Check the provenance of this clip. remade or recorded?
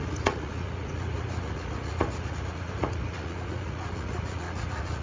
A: remade